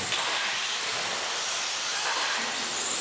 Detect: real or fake real